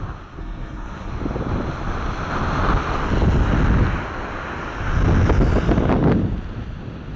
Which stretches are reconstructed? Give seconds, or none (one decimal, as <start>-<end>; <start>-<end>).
0.4-1.1

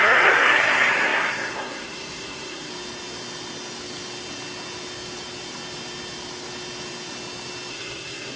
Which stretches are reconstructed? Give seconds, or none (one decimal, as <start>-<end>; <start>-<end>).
0.0-2.7; 7.7-8.4

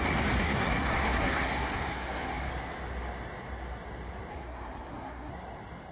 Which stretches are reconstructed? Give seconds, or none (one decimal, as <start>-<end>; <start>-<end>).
0.4-2.5; 4.3-5.3

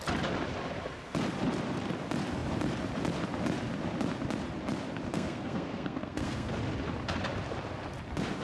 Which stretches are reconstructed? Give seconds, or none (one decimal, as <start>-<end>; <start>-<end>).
5.1-6.5

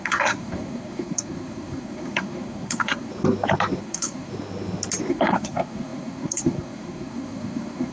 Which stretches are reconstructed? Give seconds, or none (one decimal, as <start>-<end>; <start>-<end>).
0.0-3.1; 3.8-4.3; 5.1-7.9

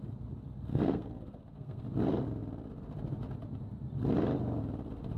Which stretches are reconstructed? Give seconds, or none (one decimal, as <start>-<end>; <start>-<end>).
0.7-1.8

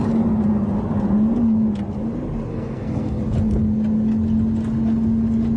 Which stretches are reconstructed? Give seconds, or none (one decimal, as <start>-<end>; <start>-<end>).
2.5-3.2